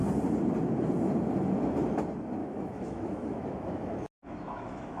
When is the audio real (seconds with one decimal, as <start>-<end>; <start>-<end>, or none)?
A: 0.0-2.4